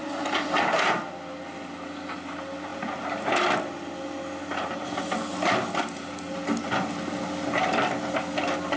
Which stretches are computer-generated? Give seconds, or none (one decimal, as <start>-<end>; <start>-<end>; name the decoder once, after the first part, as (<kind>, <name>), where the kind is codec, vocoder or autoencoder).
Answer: none